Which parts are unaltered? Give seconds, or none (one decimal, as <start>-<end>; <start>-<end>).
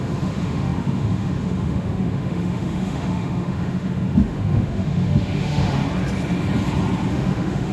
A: 5.8-7.1